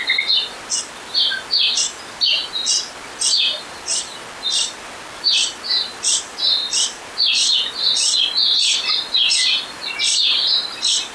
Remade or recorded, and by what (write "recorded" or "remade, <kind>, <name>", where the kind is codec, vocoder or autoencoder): recorded